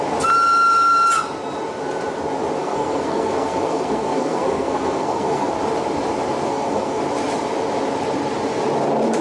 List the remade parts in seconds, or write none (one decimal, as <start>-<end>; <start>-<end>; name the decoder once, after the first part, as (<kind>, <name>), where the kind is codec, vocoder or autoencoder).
2.6-5.5 (codec, SNAC); 6.5-7.0